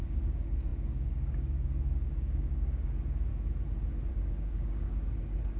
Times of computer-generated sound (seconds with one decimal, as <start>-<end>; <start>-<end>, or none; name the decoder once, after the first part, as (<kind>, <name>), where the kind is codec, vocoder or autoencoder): 0.0-3.3 (codec, DAC); 4.1-5.6